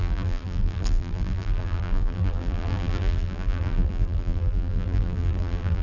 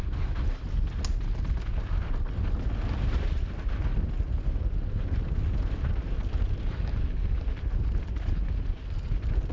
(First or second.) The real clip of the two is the second